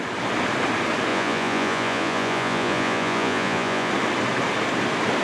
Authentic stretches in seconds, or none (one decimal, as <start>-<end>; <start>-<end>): 0.0-1.1; 3.9-5.2